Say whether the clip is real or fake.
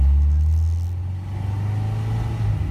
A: real